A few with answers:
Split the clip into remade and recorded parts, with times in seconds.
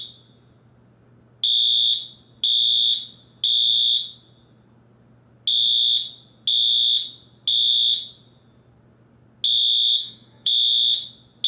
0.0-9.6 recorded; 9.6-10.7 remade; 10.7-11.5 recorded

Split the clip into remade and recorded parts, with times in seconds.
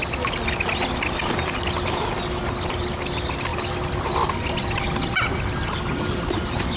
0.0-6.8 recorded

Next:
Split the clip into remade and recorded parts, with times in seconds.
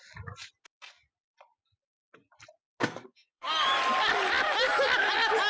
0.0-2.8 recorded; 2.8-3.5 remade; 3.5-5.5 recorded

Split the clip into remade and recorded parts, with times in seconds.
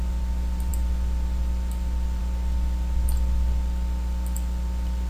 0.0-5.1 recorded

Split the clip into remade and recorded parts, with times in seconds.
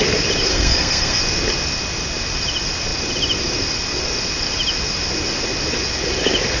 0.0-0.5 recorded; 0.5-1.2 remade; 1.2-6.6 recorded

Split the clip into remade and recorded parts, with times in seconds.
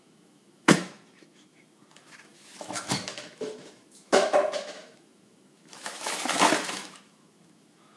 0.0-8.0 remade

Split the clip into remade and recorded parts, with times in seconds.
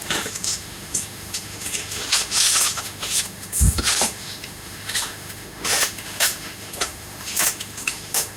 0.0-8.4 remade